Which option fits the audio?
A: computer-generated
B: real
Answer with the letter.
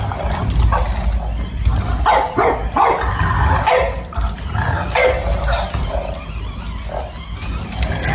B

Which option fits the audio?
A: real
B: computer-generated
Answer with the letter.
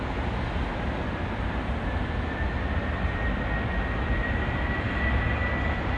A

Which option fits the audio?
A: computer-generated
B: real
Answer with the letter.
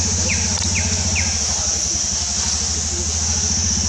B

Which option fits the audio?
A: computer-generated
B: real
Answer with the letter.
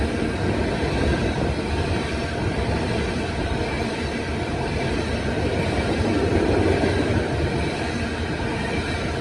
A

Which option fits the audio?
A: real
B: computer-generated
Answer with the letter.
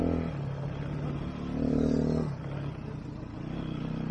A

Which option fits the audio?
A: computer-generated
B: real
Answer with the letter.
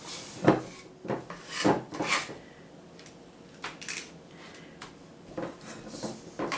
B